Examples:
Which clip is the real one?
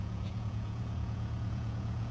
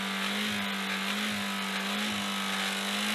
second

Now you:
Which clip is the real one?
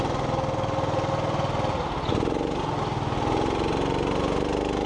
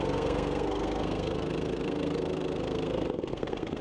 first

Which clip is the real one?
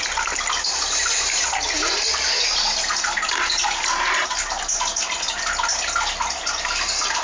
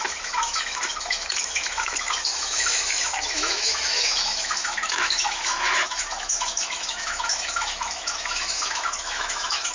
first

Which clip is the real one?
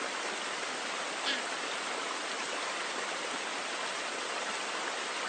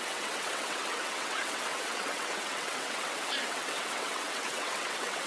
first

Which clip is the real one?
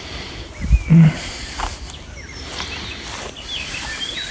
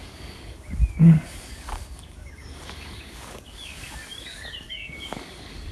first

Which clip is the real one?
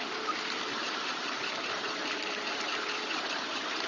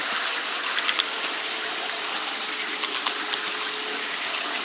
second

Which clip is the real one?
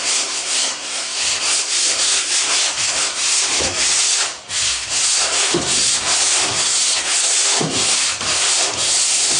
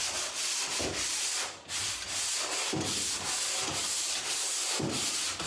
second